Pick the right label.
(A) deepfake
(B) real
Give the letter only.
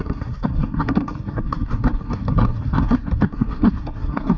A